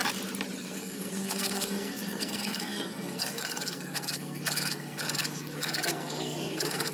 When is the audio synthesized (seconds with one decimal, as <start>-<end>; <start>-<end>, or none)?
0.6-6.9